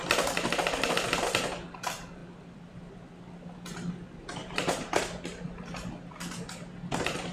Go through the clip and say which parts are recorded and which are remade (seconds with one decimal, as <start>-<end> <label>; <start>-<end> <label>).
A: 0.0-4.4 recorded; 4.4-5.0 remade; 5.0-7.3 recorded